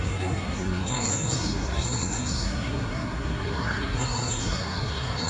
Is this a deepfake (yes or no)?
yes